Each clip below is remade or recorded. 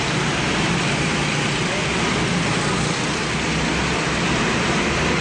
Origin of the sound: recorded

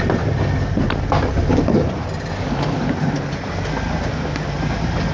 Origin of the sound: recorded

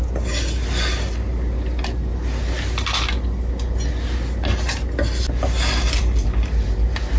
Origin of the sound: recorded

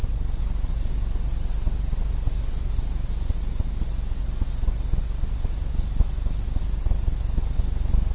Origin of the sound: recorded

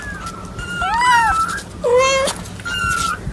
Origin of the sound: recorded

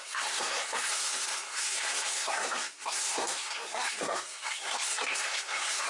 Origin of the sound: remade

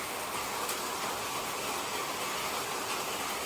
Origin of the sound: recorded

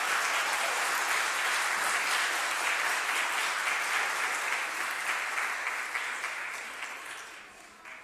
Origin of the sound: recorded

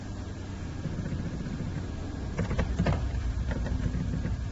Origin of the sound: remade